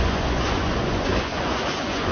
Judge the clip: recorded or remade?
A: remade